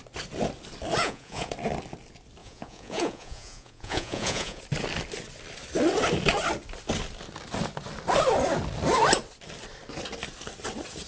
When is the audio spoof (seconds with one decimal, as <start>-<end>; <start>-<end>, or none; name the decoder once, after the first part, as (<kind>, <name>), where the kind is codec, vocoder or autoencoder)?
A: 1.0-1.5 (vocoder, Vocos); 2.4-4.6